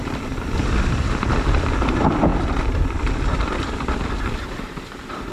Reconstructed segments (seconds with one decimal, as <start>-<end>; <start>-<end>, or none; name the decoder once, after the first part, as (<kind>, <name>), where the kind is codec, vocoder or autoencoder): 0.0-5.3 (vocoder, BigVGAN v2)